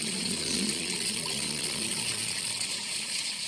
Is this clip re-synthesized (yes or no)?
yes